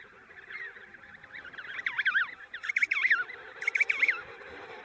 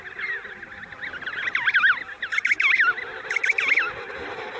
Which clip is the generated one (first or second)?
first